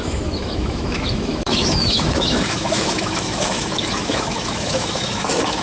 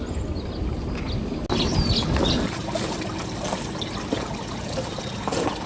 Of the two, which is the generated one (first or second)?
first